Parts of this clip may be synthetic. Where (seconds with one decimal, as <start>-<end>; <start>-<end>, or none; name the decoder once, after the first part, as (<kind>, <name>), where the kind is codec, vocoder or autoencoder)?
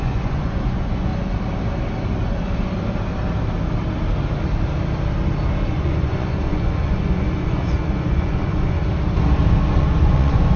0.0-1.1 (vocoder, Vocos); 5.7-8.8; 9.7-10.6